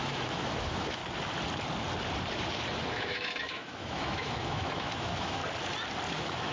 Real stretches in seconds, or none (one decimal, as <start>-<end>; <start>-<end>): 1.0-2.9; 5.4-6.1

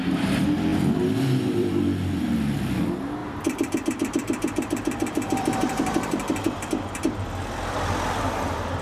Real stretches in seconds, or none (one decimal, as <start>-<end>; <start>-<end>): 0.0-0.7; 1.8-3.2

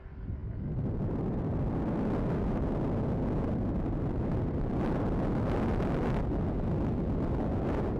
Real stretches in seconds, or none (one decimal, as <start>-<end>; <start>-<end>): 0.0-8.0

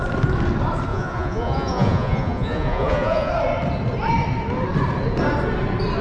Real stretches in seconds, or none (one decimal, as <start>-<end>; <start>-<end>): 0.0-0.9; 3.3-6.0